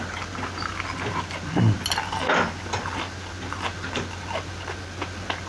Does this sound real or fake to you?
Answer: real